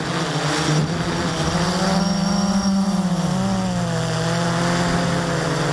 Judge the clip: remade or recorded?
recorded